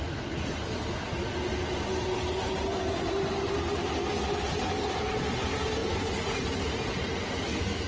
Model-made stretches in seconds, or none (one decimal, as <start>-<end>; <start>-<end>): none